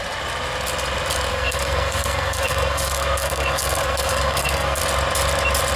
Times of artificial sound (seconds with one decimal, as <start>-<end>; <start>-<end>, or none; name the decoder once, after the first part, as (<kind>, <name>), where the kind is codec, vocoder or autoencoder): 1.3-4.8 (codec, SNAC)